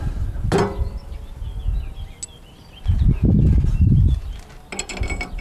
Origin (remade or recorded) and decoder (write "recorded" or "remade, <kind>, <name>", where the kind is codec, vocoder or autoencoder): recorded